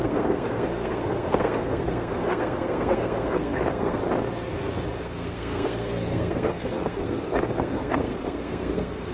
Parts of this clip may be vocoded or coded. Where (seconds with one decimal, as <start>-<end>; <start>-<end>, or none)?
0.0-4.0; 5.0-9.1